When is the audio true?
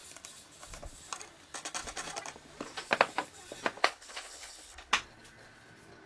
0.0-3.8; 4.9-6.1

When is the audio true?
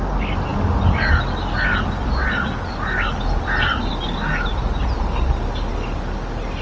0.0-6.6